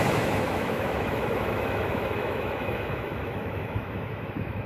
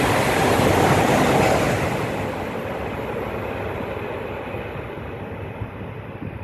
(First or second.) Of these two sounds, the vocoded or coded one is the first